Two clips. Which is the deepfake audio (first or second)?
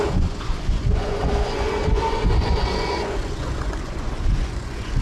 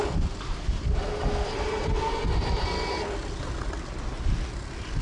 first